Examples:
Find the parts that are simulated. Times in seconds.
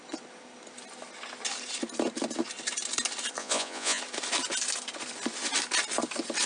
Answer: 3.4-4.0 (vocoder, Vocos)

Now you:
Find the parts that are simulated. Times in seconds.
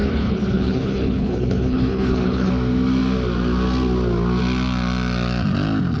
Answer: 0.0-2.5 (codec, HILCodec)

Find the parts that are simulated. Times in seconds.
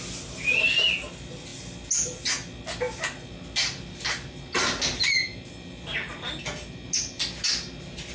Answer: none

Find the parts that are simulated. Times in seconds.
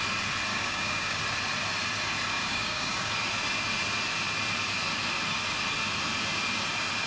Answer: 0.5-1.2 (codec, DAC); 2.3-3.1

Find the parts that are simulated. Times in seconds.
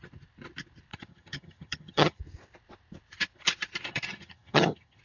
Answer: 0.9-2.2 (vocoder, HiFi-GAN); 3.9-5.0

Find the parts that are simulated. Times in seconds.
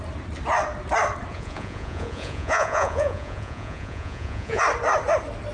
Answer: 1.3-4.6 (vocoder, Vocos)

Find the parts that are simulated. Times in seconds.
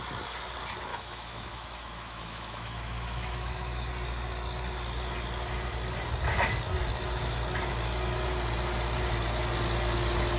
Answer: 0.9-3.9 (autoencoder, DAC-VAE)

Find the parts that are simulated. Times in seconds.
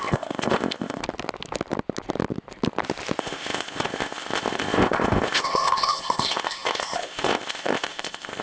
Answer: 0.0-1.0 (codec, ZipCodec); 3.2-8.4